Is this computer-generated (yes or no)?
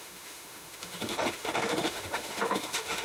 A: yes